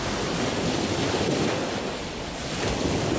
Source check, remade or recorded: recorded